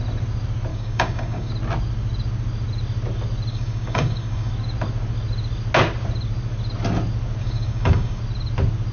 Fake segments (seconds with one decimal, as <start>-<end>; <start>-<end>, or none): 0.7-1.5; 3.5-4.5; 7.4-8.2